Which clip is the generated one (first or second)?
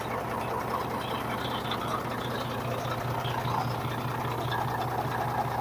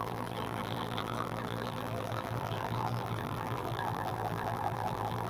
second